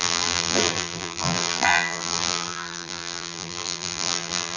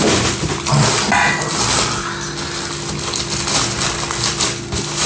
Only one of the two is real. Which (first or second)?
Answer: second